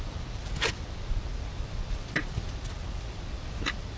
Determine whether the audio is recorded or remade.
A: recorded